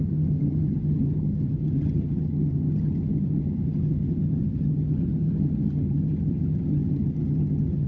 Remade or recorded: remade